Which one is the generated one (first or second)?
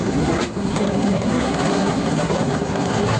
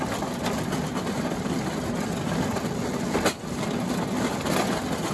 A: first